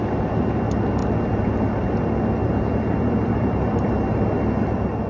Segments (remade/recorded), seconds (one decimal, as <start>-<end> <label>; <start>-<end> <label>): 0.0-2.4 recorded; 2.4-3.9 remade; 3.9-5.1 recorded